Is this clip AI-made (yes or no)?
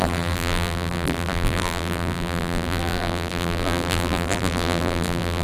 yes